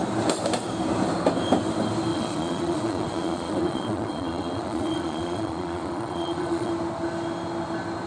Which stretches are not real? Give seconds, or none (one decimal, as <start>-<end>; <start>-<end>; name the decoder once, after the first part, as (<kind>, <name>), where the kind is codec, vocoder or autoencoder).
2.1-6.7 (vocoder, Vocos)